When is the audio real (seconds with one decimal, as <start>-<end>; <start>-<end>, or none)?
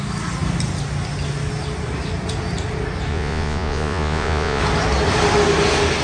0.0-3.1; 4.6-6.0